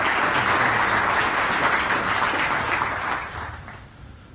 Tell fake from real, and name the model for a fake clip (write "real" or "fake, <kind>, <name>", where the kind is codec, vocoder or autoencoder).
real